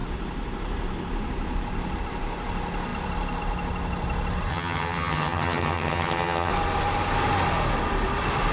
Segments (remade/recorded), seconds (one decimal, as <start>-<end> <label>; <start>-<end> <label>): 0.0-4.5 recorded; 4.5-6.5 remade; 6.5-8.5 recorded

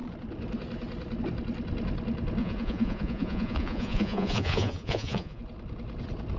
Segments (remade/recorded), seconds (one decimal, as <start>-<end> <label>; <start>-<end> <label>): 0.0-2.4 recorded; 2.4-5.4 remade; 5.4-6.4 recorded

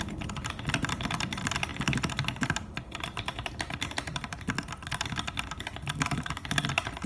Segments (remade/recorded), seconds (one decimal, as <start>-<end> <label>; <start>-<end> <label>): 0.0-7.1 recorded

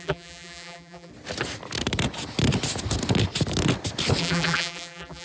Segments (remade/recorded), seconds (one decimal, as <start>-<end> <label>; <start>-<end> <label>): 0.0-1.1 remade; 1.1-4.2 recorded; 4.2-5.2 remade

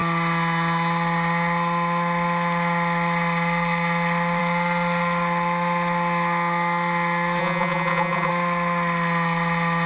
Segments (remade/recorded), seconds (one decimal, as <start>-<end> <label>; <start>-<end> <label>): 0.0-7.4 recorded; 7.4-8.3 remade; 8.3-9.9 recorded

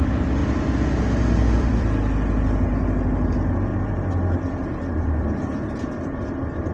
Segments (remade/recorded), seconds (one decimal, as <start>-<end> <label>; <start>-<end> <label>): 0.0-3.7 remade; 3.7-4.9 recorded; 4.9-6.7 remade

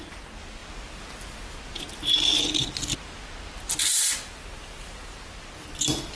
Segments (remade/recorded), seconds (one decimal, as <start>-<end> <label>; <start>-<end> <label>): 0.0-6.2 recorded